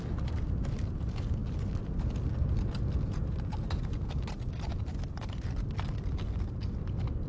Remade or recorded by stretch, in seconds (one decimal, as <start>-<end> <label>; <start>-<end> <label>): 0.0-7.3 recorded